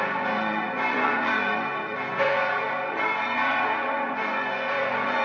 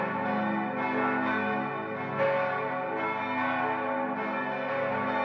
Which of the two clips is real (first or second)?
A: second